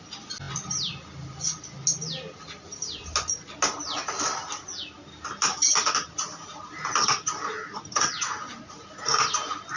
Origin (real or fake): real